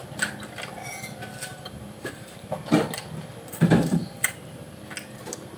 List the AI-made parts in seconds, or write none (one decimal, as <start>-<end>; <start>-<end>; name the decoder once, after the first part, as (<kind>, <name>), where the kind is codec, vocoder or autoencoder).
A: 1.5-2.5 (vocoder, BigVGAN v2); 3.5-4.7